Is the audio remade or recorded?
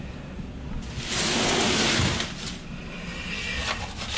recorded